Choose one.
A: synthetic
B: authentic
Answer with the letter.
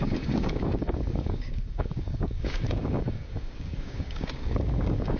A